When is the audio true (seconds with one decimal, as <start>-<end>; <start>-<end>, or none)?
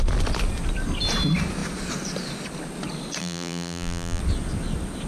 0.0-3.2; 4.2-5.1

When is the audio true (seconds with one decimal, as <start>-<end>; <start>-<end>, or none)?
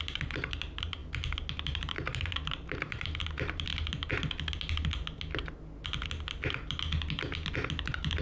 1.0-1.6; 3.7-8.2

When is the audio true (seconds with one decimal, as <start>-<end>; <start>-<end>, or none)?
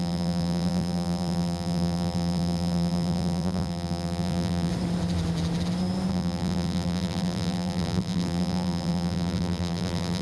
4.7-6.1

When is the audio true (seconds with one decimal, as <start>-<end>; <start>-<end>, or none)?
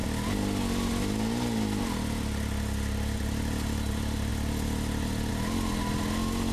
0.0-6.5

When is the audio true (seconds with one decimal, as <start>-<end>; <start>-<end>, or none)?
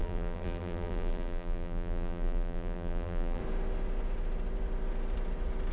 3.4-5.7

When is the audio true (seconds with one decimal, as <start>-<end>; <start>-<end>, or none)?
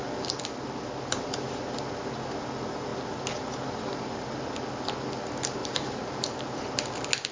0.0-5.6; 6.4-7.3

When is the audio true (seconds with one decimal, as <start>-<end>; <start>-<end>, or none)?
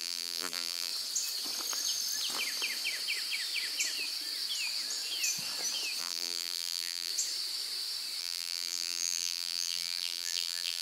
0.9-6.0; 7.1-8.2